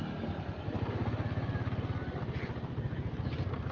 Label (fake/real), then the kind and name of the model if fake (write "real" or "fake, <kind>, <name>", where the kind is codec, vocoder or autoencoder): real